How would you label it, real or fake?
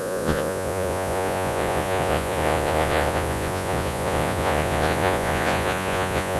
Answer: fake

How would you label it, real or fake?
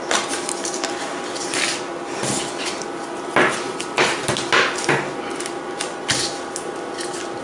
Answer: real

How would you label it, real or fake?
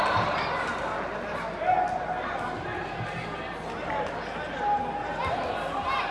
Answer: real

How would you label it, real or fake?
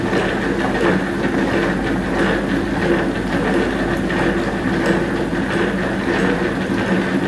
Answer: real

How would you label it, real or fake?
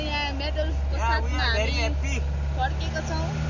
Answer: real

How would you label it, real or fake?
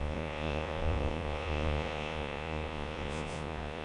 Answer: fake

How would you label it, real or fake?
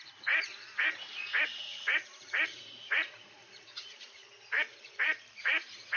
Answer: fake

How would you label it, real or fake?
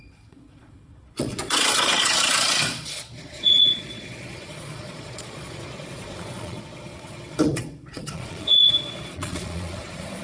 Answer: fake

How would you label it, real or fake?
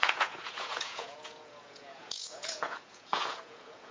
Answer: fake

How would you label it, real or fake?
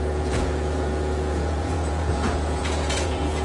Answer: fake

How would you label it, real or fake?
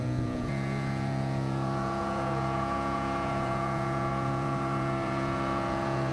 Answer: fake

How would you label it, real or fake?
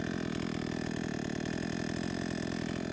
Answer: real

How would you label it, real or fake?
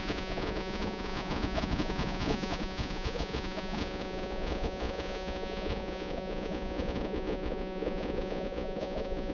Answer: fake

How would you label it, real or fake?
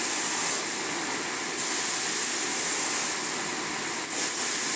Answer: real